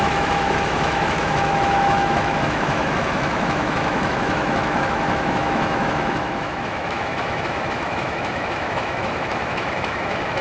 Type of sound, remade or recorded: remade